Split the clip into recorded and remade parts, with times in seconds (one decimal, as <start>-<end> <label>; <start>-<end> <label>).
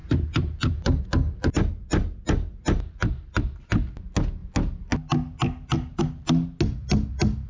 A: 0.0-7.5 recorded